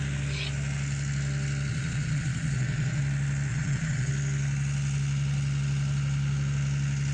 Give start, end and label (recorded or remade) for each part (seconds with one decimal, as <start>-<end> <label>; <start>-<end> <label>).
0.0-1.7 recorded; 1.7-3.0 remade; 3.0-3.5 recorded; 3.5-4.1 remade; 4.1-7.1 recorded